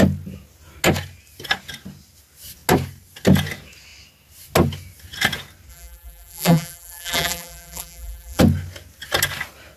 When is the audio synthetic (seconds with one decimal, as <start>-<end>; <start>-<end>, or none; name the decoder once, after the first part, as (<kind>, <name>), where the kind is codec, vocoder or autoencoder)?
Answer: 5.7-8.4 (vocoder, BigVGAN v2)